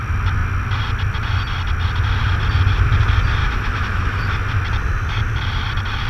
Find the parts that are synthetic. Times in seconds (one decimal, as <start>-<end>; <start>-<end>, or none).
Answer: 3.4-4.3